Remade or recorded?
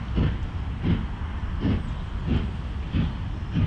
recorded